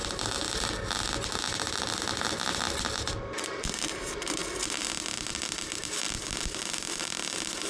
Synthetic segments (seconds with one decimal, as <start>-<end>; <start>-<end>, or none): 3.2-7.7